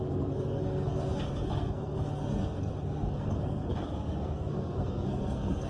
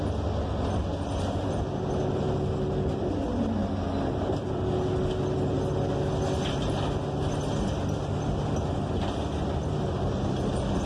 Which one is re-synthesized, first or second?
first